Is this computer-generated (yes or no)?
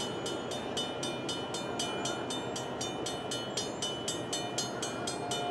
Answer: no